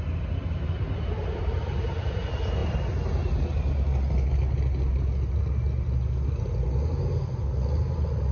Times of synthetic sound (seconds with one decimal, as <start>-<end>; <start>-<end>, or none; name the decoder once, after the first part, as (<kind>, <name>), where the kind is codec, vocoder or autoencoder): none